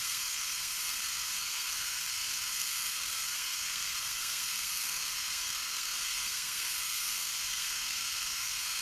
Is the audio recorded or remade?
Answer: remade